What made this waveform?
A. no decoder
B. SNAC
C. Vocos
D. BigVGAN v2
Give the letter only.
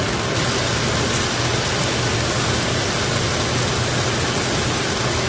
A